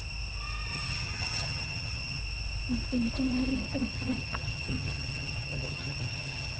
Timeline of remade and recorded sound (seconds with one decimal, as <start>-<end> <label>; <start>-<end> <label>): 0.0-0.7 recorded; 0.7-2.2 remade; 2.2-3.5 recorded; 3.5-6.6 remade